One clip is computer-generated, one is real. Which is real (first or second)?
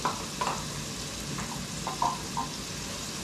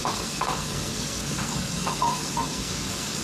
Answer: first